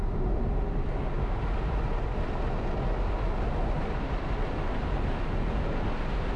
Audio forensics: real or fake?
real